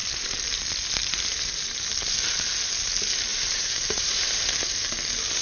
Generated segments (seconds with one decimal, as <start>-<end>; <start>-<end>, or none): 1.0-1.9; 3.3-4.9